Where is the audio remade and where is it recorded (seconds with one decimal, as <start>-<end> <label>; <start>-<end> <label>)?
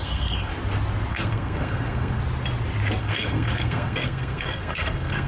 0.0-0.5 remade; 0.5-1.1 recorded; 1.1-2.2 remade; 2.2-3.0 recorded; 3.0-5.3 remade